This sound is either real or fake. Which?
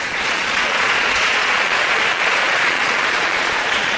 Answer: fake